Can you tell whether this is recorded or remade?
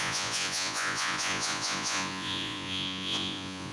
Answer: remade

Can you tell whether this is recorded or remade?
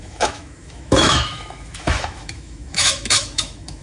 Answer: remade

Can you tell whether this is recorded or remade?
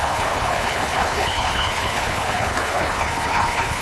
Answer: remade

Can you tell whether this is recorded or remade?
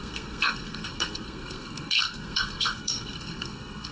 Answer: remade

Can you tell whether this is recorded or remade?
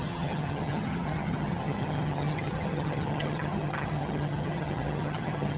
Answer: remade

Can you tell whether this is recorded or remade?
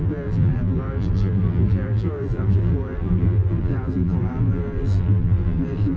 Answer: remade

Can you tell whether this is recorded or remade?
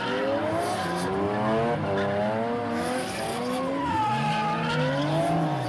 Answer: recorded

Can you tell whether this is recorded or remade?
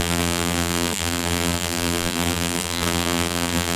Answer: remade